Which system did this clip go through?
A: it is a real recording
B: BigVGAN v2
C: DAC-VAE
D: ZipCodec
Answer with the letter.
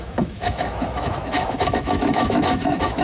C